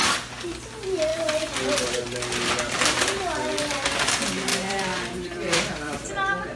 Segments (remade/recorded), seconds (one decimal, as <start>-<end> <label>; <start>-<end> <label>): 0.0-0.7 remade; 0.7-4.5 recorded; 4.5-6.1 remade; 6.1-6.6 recorded